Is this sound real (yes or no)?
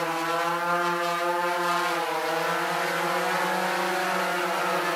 yes